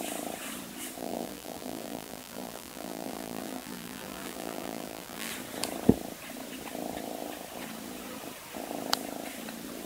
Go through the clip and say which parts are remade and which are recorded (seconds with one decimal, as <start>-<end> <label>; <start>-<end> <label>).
0.0-1.0 recorded; 1.0-5.3 remade; 5.3-9.9 recorded